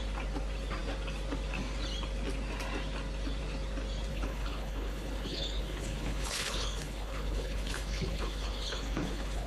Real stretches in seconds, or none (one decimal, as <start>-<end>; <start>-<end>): 0.0-4.1